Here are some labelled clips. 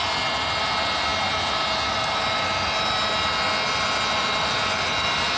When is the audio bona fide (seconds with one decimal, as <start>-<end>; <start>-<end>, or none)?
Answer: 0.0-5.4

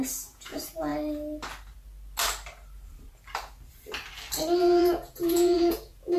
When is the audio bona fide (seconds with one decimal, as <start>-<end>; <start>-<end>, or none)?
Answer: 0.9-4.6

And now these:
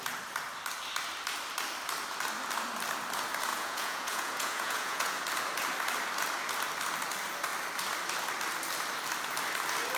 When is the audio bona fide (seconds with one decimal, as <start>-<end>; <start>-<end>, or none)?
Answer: 0.0-3.5; 5.2-10.0

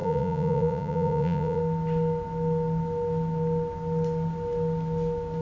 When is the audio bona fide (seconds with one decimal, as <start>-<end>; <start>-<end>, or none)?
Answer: 1.6-5.4